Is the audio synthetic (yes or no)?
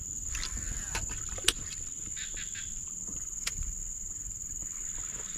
no